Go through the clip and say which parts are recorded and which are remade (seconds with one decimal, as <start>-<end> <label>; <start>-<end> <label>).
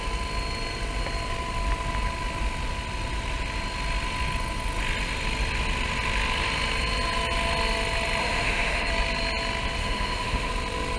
0.0-8.2 recorded; 8.2-8.9 remade; 8.9-9.8 recorded; 9.8-10.5 remade; 10.5-11.0 recorded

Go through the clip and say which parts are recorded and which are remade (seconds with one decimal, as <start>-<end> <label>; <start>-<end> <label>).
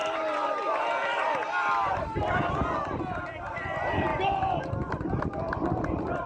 0.0-6.3 recorded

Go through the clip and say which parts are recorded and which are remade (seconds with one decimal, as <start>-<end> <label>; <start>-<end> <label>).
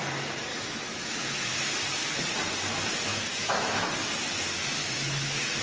0.0-0.5 recorded; 0.5-1.7 remade; 1.7-3.1 recorded; 3.1-3.9 remade; 3.9-4.8 recorded; 4.8-5.6 remade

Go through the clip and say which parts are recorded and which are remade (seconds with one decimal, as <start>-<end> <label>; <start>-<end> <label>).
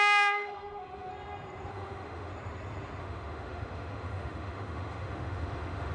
0.0-1.1 remade; 1.1-1.7 recorded; 1.7-2.3 remade; 2.3-3.0 recorded; 3.0-5.9 remade